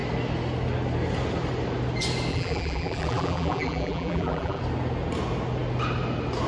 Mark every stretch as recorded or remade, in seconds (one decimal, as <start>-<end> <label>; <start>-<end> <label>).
0.0-2.3 recorded; 2.3-4.6 remade; 4.6-6.5 recorded